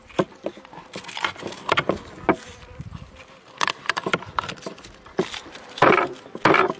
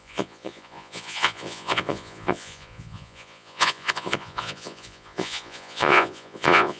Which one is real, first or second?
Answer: first